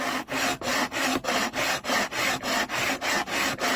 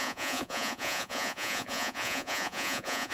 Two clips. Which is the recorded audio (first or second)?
first